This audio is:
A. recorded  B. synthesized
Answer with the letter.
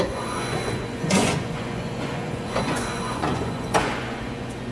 B